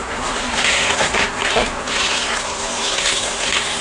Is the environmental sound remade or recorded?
remade